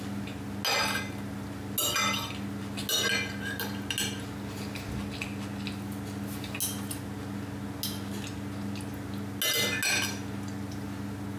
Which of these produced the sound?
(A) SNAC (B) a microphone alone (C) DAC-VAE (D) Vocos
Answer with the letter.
B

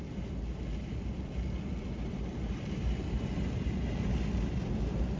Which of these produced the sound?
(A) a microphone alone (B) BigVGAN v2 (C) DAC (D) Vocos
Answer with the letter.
A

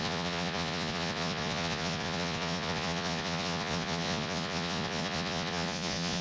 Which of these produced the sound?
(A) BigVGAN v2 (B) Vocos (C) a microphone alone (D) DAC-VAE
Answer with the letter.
B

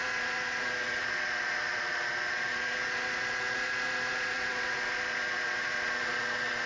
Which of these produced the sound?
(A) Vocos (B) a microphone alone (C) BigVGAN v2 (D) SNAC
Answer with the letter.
A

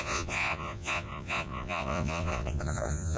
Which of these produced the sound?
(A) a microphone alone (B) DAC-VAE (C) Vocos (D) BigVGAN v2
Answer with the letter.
C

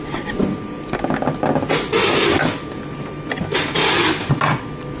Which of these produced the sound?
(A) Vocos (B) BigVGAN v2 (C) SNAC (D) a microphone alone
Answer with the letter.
D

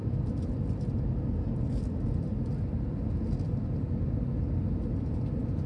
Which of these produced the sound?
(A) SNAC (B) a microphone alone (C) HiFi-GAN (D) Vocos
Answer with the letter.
B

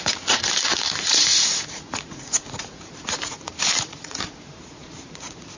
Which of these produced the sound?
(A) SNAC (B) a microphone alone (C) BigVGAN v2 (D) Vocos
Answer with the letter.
D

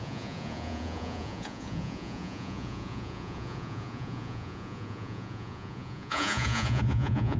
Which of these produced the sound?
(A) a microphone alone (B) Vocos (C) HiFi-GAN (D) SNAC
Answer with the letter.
B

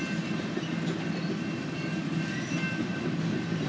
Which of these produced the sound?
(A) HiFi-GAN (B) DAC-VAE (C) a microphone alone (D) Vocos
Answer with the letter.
C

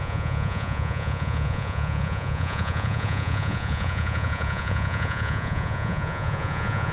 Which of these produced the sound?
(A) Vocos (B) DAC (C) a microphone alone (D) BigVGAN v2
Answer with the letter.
A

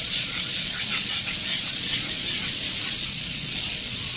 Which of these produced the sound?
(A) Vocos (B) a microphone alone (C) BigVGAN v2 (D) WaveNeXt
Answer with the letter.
A